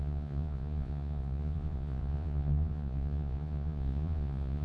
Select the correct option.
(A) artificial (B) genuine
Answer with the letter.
A